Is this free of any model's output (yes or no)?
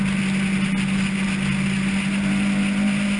yes